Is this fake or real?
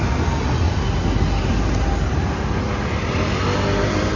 real